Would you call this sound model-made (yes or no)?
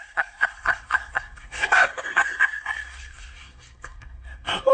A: yes